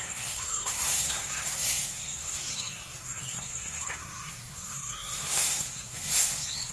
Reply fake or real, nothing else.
fake